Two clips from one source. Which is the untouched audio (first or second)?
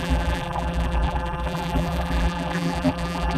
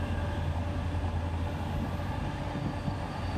second